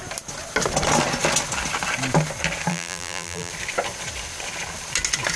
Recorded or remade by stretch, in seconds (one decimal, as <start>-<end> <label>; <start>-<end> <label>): 0.0-2.7 recorded; 2.7-3.5 remade; 3.5-5.4 recorded

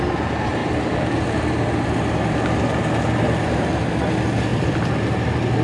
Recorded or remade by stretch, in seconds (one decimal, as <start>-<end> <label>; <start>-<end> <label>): 0.0-4.5 recorded; 4.5-5.0 remade; 5.0-5.6 recorded

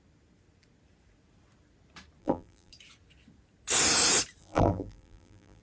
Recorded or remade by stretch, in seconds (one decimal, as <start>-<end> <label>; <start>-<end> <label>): 0.0-2.2 recorded; 2.2-2.7 remade; 2.7-4.4 recorded; 4.4-5.6 remade

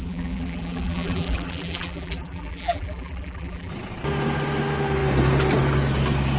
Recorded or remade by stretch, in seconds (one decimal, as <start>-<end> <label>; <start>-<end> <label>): 0.0-3.7 remade; 3.7-6.4 recorded